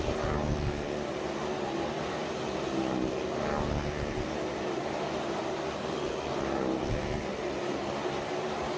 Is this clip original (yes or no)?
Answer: yes